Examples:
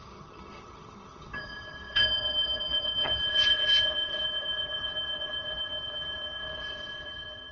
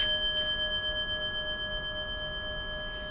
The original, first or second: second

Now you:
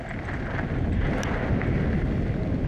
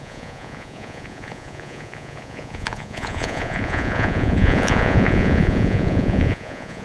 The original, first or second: first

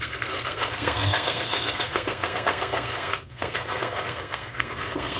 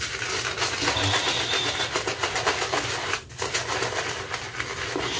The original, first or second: second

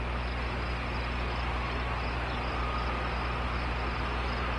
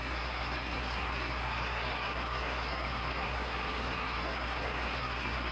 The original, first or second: first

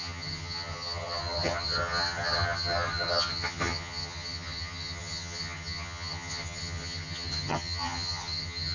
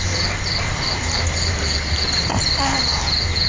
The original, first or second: second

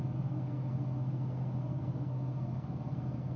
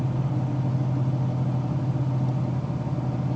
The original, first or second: second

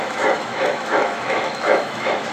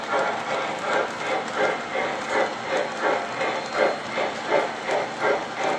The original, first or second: second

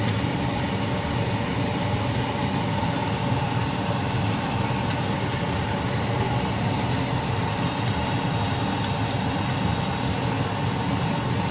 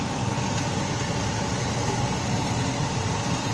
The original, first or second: first